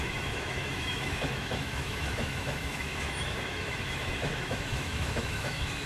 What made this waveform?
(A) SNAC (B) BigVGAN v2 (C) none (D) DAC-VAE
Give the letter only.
D